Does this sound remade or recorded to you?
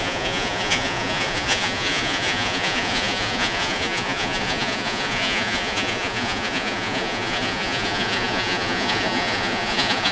remade